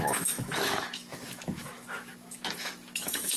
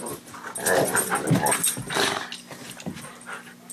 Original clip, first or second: second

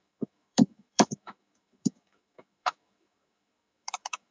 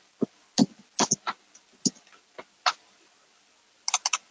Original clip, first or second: second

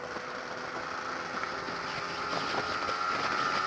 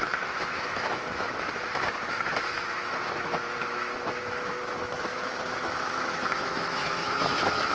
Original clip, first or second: first